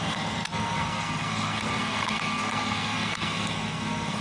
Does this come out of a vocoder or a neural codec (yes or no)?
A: yes